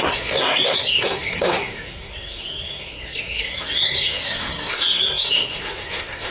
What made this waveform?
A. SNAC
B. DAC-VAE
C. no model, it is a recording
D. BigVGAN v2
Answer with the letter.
A